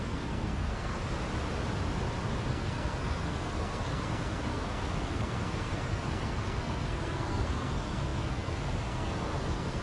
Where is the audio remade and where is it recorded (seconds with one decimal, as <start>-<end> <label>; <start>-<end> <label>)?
0.0-1.0 remade; 1.0-2.5 recorded; 2.5-9.8 remade